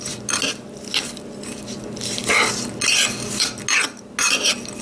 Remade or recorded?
recorded